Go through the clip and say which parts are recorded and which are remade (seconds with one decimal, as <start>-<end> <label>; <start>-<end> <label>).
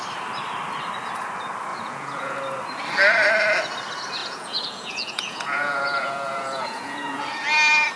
0.0-1.7 recorded; 1.7-2.4 remade; 2.4-4.2 recorded; 4.2-7.2 remade; 7.2-8.0 recorded